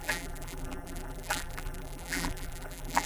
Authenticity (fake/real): fake